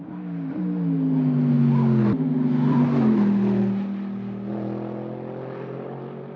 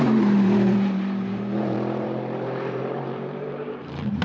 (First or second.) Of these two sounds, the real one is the first